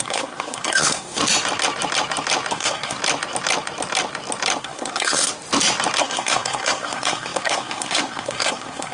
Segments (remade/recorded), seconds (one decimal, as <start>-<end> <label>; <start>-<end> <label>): 0.0-1.2 remade; 1.2-2.5 recorded; 2.5-3.0 remade; 3.0-4.6 recorded; 4.6-5.3 remade; 5.3-6.0 recorded; 6.0-8.9 remade